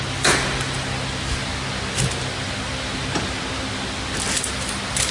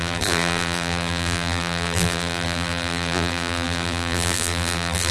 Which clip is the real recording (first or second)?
first